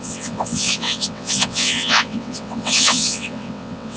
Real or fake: fake